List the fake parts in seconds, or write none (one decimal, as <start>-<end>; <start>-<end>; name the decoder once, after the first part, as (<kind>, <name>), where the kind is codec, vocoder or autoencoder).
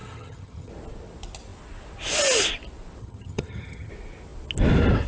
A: 0.0-0.7 (vocoder, HiFi-GAN); 3.0-3.9